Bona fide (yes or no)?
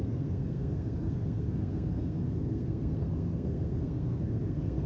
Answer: no